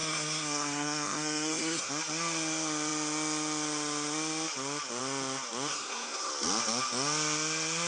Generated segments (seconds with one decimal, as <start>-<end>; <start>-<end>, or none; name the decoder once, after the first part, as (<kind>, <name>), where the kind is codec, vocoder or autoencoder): 0.0-1.9 (codec, SNAC); 5.7-6.3